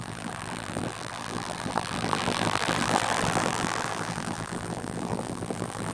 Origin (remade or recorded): remade